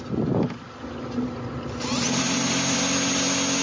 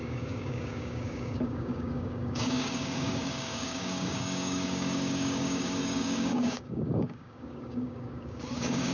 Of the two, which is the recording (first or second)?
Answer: first